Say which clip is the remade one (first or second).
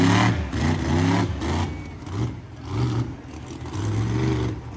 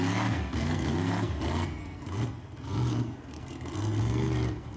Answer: second